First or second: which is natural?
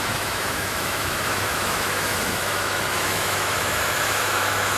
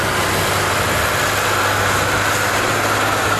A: second